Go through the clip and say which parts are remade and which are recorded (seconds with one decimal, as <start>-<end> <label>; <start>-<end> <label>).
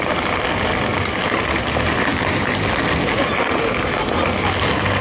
0.0-5.0 recorded